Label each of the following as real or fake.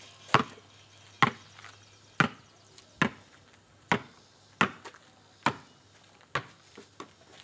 real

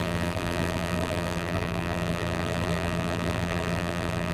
fake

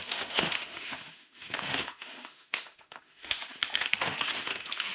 fake